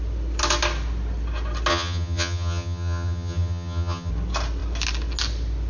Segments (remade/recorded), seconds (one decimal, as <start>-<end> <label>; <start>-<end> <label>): 0.0-1.7 recorded; 1.7-4.1 remade; 4.1-5.7 recorded